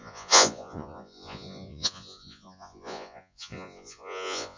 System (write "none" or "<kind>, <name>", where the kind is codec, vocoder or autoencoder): vocoder, Vocos